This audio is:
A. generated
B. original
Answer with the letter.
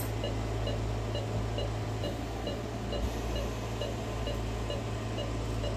B